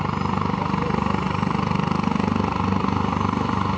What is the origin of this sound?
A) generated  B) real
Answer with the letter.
B